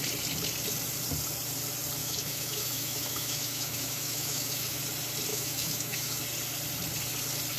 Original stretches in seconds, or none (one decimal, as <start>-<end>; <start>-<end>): 0.0-2.0; 4.8-5.3; 6.2-7.6

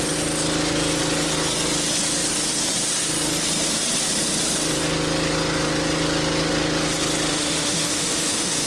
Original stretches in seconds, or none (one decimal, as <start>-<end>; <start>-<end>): 0.0-7.3

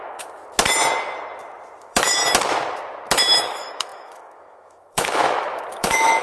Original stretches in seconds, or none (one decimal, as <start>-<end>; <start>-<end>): 0.4-1.8; 2.2-3.1

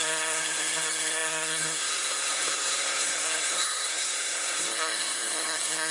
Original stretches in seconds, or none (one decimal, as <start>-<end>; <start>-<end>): none